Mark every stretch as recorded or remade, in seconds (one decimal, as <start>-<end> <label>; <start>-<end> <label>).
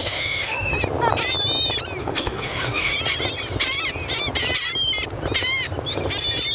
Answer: 0.0-0.7 remade; 0.7-2.0 recorded; 2.0-2.9 remade; 2.9-6.5 recorded